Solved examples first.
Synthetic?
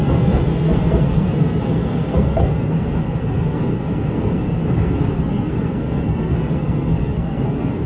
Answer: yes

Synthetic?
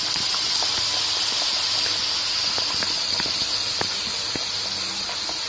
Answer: no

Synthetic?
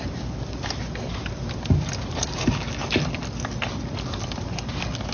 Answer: no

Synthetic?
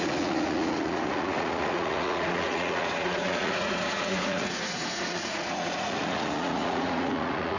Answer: yes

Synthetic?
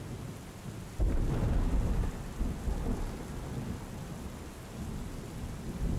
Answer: no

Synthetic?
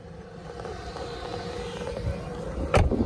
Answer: yes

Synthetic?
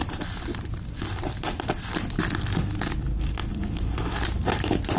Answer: yes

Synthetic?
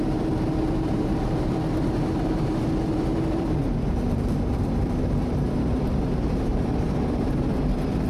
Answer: yes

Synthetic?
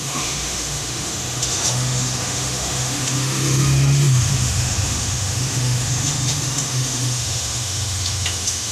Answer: yes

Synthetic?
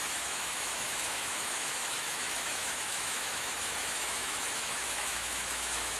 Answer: yes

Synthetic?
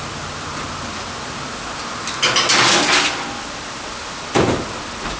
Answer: no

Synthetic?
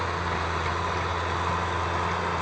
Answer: no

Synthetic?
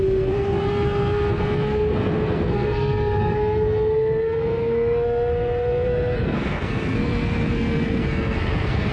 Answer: yes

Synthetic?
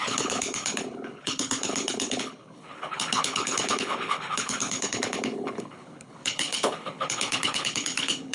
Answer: yes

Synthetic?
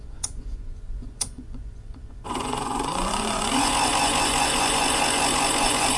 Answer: yes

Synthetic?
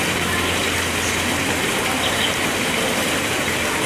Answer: no